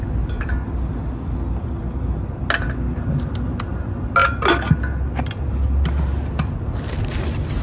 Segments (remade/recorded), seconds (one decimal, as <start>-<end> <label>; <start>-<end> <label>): 0.0-7.6 recorded